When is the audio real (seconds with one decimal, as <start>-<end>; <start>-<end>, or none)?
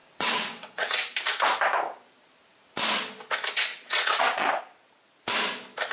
1.0-3.7; 4.6-5.9